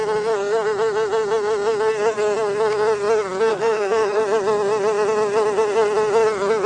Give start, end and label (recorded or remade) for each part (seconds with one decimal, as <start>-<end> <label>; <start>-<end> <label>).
0.0-3.5 recorded; 3.5-4.2 remade; 4.2-6.7 recorded